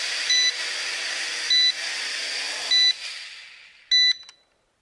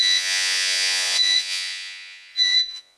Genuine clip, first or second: first